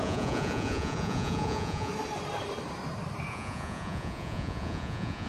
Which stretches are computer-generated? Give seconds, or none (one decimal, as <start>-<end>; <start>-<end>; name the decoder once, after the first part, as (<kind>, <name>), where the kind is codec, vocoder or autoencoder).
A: 0.0-1.9 (vocoder, Vocos); 3.3-5.3